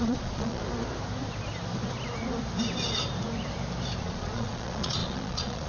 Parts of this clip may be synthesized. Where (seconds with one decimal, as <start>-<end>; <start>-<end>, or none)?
0.0-0.6; 4.0-5.7